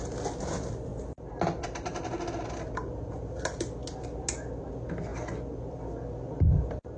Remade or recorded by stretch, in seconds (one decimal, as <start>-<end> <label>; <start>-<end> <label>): 0.0-7.0 recorded